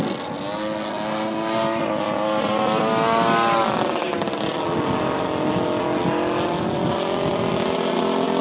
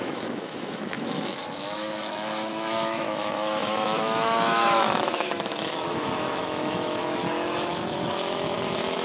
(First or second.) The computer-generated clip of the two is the second